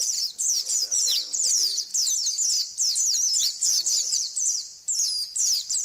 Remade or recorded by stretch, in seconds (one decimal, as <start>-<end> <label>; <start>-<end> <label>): 0.0-1.9 remade; 1.9-3.4 recorded; 3.4-4.9 remade; 4.9-5.8 recorded